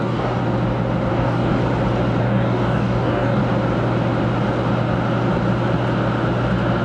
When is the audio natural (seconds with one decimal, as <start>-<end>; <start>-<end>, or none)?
0.4-1.1; 1.6-2.2; 3.4-6.8